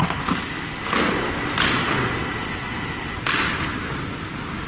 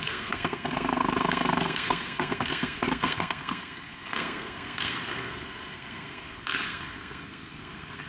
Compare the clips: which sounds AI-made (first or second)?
second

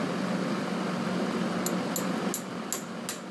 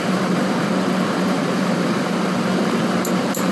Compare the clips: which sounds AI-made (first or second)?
second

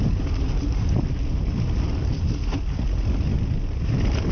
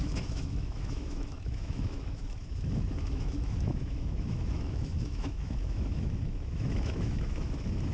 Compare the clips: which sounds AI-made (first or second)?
second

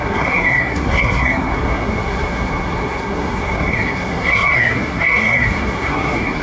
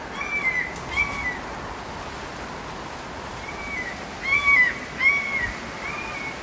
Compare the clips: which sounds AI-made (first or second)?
first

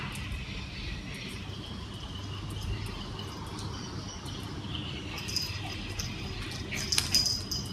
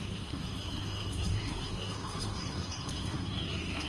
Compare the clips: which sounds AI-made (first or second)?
second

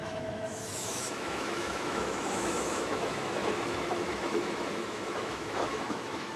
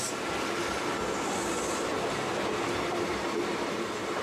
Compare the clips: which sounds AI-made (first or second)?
first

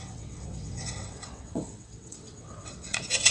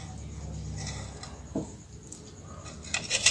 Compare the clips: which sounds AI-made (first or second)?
first